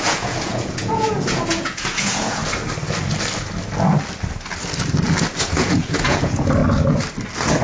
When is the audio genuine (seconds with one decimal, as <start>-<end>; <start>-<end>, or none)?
2.4-5.4; 6.6-7.6